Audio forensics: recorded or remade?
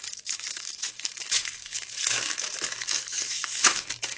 remade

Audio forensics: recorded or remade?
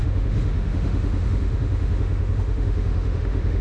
remade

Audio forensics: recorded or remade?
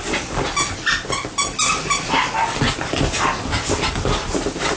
recorded